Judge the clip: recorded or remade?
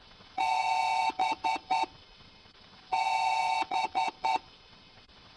remade